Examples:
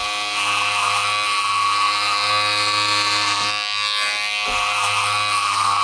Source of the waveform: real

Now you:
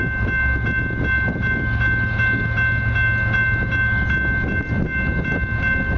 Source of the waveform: real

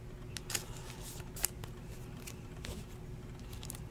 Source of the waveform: real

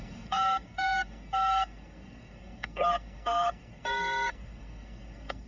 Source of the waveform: fake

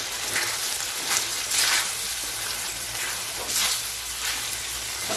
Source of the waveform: real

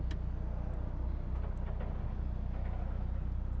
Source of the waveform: real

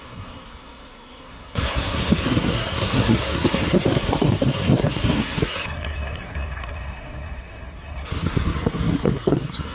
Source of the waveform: fake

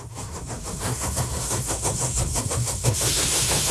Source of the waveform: fake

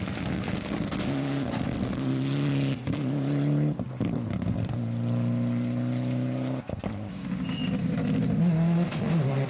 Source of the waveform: real